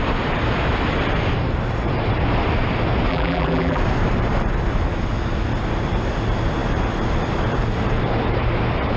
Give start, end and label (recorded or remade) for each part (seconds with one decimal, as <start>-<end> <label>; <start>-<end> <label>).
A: 0.0-3.1 recorded; 3.1-3.8 remade; 3.8-9.0 recorded